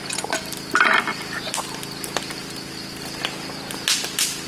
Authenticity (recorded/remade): recorded